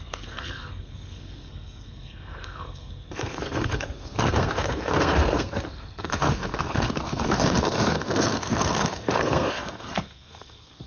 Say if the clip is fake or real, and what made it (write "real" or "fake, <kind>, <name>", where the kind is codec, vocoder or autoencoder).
fake, codec, SNAC